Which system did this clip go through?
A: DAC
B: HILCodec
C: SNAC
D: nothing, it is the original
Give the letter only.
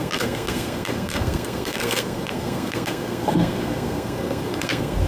C